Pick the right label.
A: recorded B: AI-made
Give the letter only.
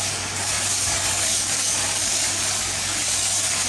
B